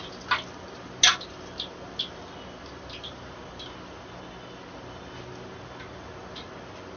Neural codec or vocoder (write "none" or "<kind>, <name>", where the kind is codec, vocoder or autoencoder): none